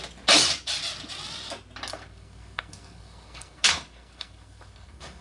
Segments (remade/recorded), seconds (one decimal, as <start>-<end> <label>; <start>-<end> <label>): 0.0-1.9 recorded; 1.9-5.2 remade